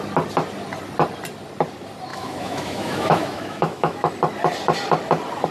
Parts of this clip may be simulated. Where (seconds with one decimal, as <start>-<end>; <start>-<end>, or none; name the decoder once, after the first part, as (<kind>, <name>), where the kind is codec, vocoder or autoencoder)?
2.1-4.1 (autoencoder, DAC-VAE)